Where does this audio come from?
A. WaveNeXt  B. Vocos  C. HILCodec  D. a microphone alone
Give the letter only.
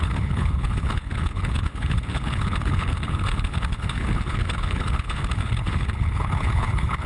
C